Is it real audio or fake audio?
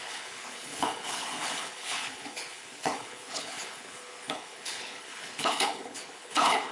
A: fake